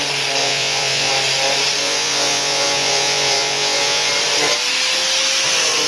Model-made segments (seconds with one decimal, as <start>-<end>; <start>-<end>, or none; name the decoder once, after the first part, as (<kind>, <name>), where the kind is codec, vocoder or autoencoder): 0.4-1.1 (vocoder, Vocos); 1.8-4.1